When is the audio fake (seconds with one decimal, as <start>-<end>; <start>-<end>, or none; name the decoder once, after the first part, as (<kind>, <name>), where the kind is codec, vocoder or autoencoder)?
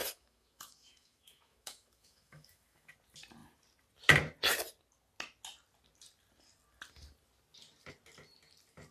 0.0-2.9 (autoencoder, DAC-VAE)